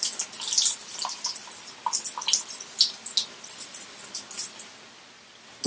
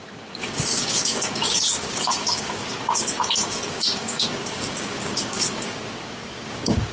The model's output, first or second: second